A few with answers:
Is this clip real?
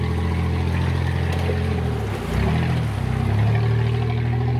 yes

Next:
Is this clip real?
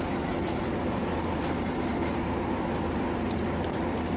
no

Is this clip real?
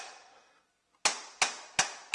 yes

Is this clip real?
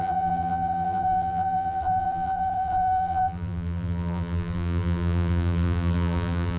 no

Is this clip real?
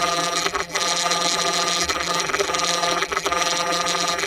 no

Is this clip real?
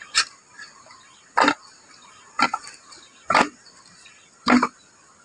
yes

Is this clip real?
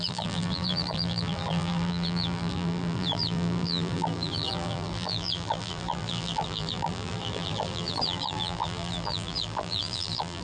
no